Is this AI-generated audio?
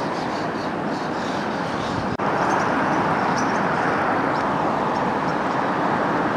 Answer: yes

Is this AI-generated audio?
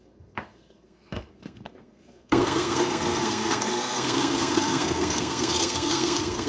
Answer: yes